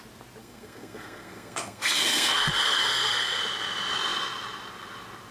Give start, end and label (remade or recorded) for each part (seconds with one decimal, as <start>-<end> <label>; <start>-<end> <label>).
0.0-0.4 recorded; 0.4-3.4 remade; 3.4-5.3 recorded